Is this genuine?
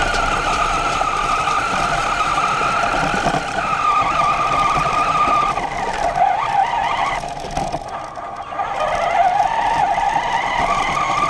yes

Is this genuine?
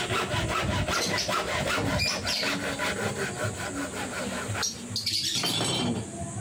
yes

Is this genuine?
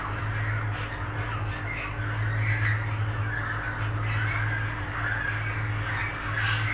yes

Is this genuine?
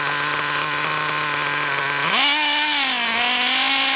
yes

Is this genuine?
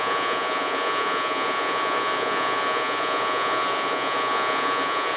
no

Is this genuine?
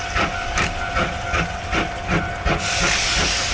yes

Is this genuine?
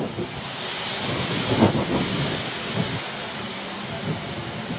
yes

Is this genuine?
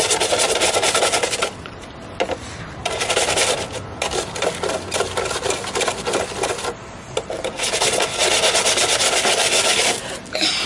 yes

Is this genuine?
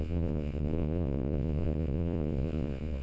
no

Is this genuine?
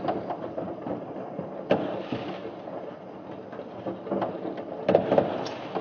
yes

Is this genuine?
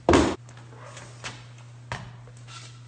yes